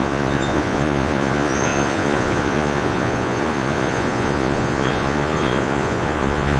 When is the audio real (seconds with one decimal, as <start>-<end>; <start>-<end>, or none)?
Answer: none